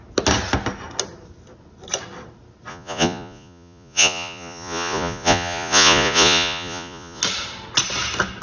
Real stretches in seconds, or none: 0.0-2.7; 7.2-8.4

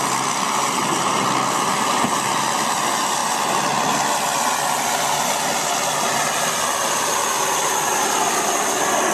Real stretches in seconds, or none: 0.0-9.1

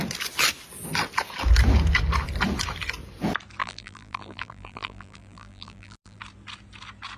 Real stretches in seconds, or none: 0.0-3.6; 6.2-7.2

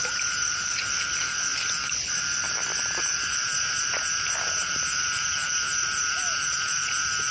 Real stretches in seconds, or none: 0.0-7.3

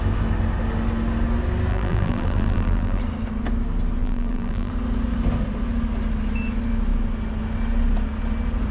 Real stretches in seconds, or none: 0.0-1.7; 3.0-4.0; 4.7-8.7